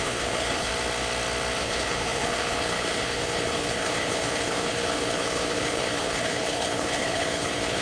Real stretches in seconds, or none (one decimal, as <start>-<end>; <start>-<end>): 0.7-1.6

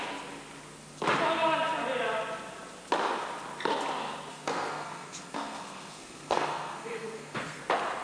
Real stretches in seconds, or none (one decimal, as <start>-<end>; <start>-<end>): 0.0-4.3; 7.6-8.0

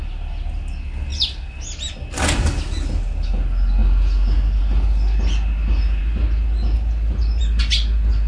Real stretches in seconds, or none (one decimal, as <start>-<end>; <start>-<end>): 0.0-8.3

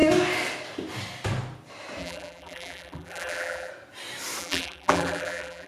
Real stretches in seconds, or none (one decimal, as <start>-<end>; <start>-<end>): 0.0-2.0; 3.7-4.4

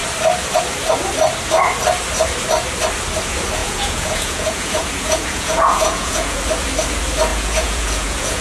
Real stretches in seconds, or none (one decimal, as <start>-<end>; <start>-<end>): 0.0-3.6; 6.4-7.3